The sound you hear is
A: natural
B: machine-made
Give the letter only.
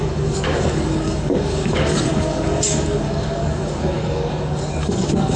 B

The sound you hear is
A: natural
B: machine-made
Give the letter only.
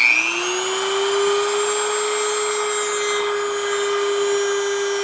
A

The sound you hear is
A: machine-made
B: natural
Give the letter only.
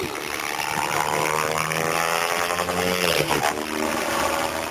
B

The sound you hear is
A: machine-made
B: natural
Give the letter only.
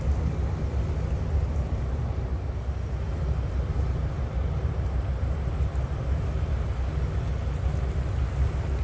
B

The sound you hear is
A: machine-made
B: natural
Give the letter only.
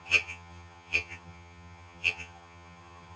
A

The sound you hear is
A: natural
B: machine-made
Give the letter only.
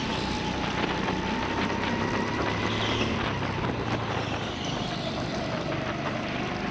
A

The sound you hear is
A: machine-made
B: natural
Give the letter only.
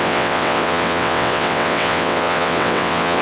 A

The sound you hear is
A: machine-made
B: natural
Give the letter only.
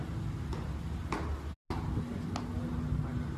B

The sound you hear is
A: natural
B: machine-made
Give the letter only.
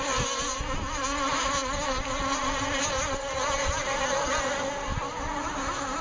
A